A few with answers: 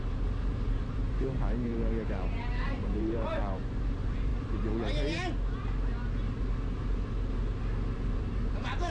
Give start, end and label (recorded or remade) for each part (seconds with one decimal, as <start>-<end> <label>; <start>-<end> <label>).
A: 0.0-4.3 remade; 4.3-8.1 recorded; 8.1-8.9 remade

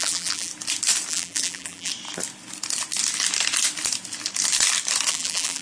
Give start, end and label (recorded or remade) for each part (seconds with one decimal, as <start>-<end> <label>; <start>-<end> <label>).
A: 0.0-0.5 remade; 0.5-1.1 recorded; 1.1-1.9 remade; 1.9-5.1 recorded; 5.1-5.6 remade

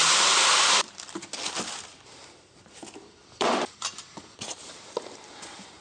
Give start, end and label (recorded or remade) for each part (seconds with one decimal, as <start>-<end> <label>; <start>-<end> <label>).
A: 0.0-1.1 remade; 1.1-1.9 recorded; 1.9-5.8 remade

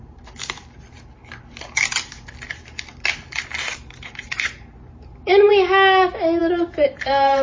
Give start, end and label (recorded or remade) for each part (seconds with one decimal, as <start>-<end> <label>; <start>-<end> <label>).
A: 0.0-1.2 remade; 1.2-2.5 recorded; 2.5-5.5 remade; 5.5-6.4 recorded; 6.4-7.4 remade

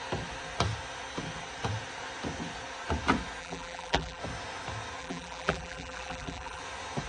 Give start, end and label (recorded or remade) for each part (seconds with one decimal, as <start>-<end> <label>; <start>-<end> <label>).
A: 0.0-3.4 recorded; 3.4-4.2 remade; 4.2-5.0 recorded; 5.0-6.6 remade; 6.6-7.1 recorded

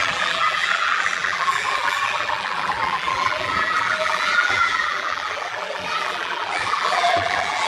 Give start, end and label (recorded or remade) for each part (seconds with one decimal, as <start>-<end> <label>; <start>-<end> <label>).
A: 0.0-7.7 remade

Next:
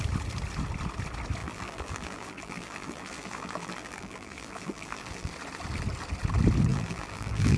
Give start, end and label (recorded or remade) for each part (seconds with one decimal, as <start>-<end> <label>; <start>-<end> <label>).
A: 0.0-1.4 recorded; 1.4-5.3 remade; 5.3-6.7 recorded; 6.7-7.6 remade

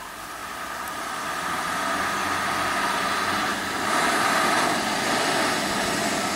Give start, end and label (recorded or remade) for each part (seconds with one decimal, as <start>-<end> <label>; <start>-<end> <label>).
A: 0.0-0.4 recorded; 0.4-1.1 remade; 1.1-3.5 recorded; 3.5-4.4 remade; 4.4-6.4 recorded